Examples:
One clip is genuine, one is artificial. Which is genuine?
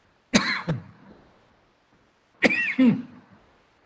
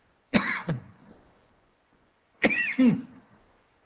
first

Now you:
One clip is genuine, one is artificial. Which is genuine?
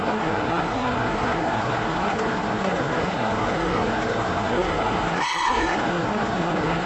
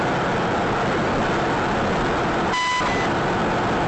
second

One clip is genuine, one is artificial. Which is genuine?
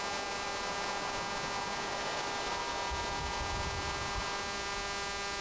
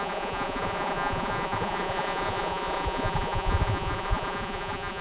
first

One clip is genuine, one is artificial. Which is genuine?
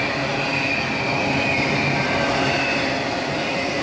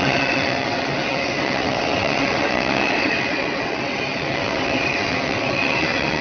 first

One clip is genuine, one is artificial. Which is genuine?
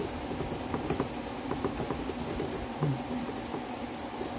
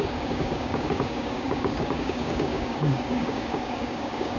first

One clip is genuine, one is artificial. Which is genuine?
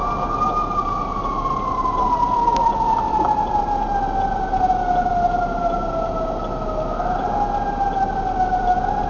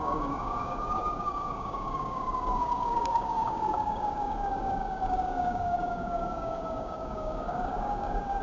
first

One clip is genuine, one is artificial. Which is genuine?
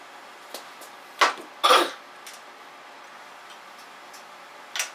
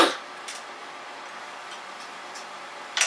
first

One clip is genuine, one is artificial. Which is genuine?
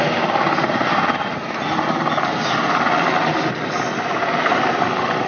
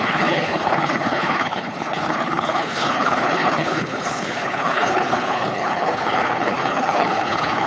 first